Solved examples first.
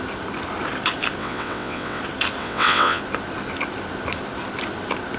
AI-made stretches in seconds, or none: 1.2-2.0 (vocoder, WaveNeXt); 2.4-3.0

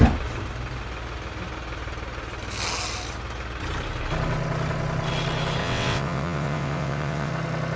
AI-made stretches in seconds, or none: 5.6-7.3 (vocoder, WaveNeXt)

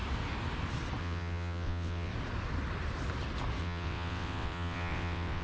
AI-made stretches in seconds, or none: 1.0-2.1 (vocoder, WaveNeXt); 3.6-5.4

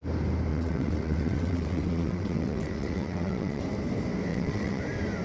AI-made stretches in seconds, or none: 0.5-3.6 (vocoder, WaveNeXt); 4.3-4.8

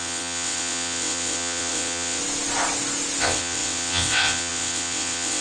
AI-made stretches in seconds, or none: 0.0-2.2 (vocoder, WaveNeXt); 3.2-5.4

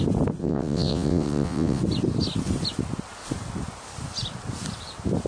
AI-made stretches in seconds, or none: 0.4-1.8 (vocoder, WaveNeXt)